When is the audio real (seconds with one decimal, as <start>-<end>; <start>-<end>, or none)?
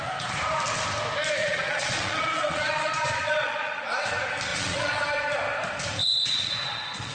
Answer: 0.0-1.4; 3.8-4.5; 5.0-6.0